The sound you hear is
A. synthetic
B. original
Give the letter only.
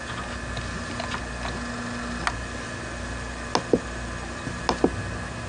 B